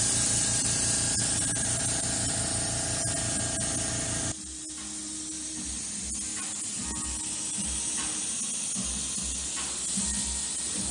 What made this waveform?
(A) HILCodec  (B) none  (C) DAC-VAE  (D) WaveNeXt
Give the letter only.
B